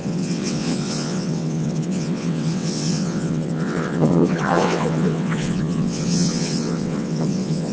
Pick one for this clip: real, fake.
fake